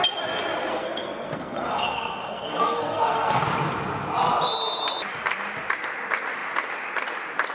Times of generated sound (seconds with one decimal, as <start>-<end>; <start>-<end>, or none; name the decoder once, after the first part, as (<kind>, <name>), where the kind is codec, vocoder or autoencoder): 0.7-3.4 (codec, SNAC)